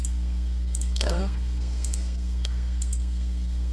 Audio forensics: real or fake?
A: fake